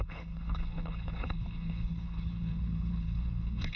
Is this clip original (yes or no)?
no